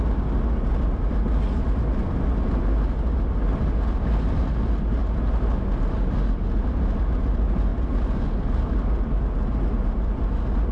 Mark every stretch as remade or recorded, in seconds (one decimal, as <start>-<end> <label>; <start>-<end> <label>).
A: 0.0-10.7 recorded